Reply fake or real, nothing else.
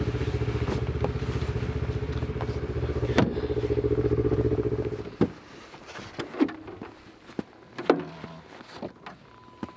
real